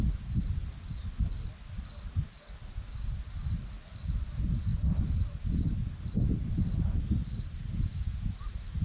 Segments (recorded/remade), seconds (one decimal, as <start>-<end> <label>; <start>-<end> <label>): 0.0-8.8 recorded